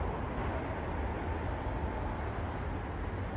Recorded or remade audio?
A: recorded